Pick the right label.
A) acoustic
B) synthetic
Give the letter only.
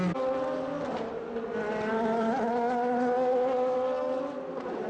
A